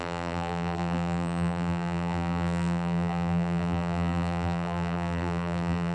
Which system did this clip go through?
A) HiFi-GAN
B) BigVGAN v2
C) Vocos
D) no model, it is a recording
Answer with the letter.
B